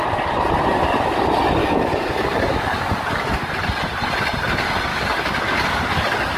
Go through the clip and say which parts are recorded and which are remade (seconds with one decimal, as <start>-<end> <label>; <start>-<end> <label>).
0.0-1.6 recorded; 1.6-3.3 remade; 3.3-4.9 recorded; 4.9-6.4 remade